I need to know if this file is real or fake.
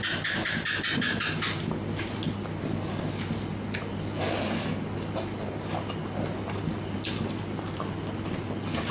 real